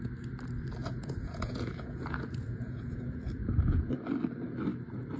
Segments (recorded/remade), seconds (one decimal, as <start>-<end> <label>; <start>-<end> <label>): 0.0-0.8 recorded; 0.8-3.9 remade; 3.9-5.2 recorded